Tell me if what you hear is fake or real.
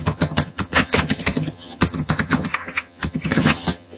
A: fake